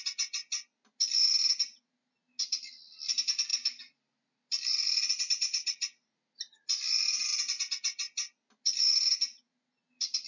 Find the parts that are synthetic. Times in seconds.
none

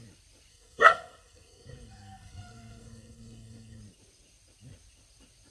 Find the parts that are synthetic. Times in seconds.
0.5-3.8 (codec, SNAC)

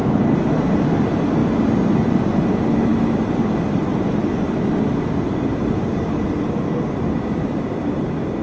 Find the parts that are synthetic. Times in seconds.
none

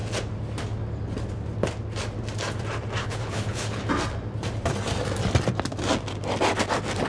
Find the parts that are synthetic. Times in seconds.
3.0-3.8 (codec, HILCodec)